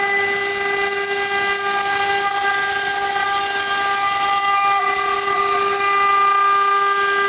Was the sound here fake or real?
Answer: real